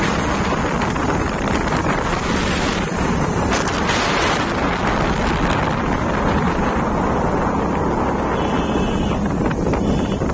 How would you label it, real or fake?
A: real